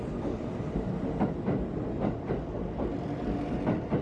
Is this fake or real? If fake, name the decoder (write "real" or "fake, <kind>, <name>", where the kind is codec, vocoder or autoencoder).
real